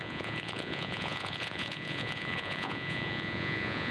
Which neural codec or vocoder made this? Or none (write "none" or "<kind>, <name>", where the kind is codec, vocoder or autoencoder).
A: vocoder, Vocos